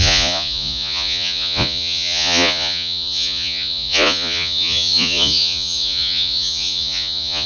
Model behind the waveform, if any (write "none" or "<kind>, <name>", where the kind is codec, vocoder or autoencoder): vocoder, Vocos